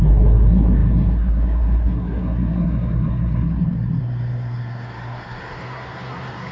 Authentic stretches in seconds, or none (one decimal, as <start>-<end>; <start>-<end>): none